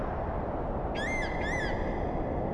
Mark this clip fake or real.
real